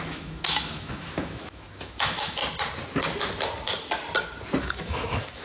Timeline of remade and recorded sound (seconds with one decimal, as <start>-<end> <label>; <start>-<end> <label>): 0.0-2.4 remade; 2.4-4.6 recorded; 4.6-5.4 remade